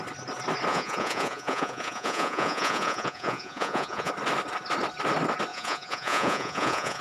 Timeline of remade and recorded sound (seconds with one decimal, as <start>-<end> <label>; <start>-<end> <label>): 0.0-0.7 recorded; 0.7-4.1 remade; 4.1-5.5 recorded; 5.5-7.0 remade